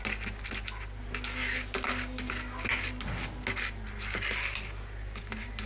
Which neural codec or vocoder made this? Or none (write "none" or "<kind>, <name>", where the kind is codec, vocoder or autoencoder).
none